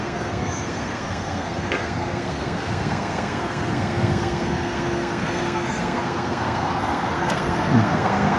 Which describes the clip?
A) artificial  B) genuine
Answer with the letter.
A